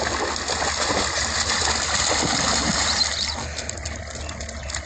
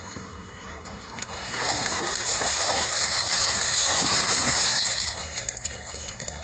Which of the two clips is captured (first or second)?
first